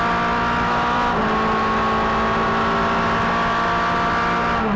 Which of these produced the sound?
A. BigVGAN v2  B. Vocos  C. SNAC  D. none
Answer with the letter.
D